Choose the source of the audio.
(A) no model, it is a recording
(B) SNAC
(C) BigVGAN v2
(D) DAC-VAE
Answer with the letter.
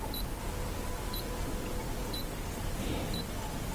C